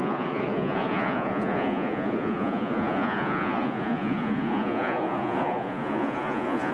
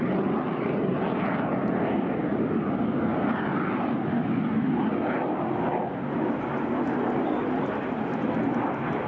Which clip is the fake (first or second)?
first